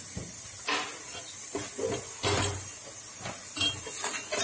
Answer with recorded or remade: recorded